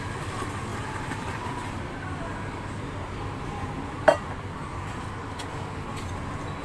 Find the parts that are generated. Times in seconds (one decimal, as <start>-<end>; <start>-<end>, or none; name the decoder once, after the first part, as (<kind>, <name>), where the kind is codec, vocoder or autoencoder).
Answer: 0.7-1.8 (vocoder, BigVGAN v2); 4.1-5.4